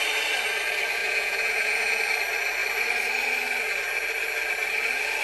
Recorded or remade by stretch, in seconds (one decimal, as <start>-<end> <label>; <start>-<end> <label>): 0.0-1.0 recorded; 1.0-2.0 remade; 2.0-5.2 recorded